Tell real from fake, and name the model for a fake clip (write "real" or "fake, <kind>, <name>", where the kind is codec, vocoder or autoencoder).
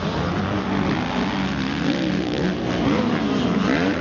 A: real